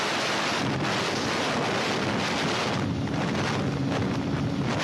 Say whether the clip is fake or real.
real